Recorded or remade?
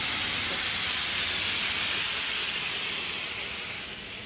recorded